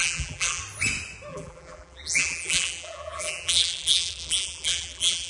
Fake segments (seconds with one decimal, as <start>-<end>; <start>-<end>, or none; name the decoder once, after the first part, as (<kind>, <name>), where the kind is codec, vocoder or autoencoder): 0.0-0.6 (vocoder, BigVGAN v2); 1.3-5.3